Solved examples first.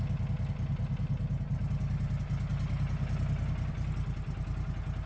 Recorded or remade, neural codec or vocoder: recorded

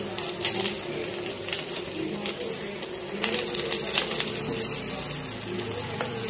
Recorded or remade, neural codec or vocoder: recorded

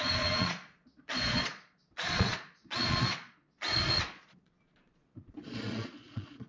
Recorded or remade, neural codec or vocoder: remade, vocoder, Vocos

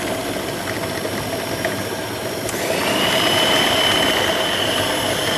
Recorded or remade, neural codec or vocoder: recorded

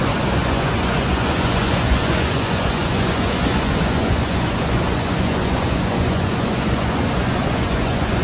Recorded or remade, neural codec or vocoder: remade, vocoder, Vocos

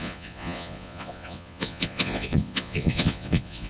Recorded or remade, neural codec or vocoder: remade, vocoder, Vocos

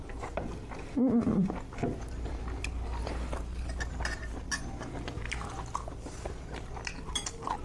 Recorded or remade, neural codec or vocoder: recorded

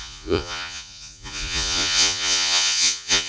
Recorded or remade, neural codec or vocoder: remade, vocoder, Vocos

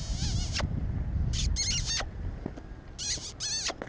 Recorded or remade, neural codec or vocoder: recorded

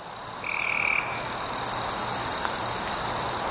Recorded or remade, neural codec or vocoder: recorded